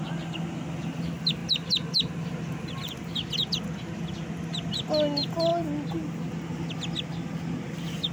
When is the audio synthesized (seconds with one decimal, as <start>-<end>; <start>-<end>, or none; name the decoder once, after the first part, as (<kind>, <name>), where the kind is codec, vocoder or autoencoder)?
none